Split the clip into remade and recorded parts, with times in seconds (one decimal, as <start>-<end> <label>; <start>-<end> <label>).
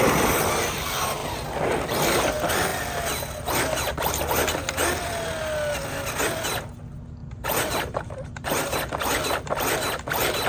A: 0.0-7.2 recorded; 7.2-8.9 remade; 8.9-10.5 recorded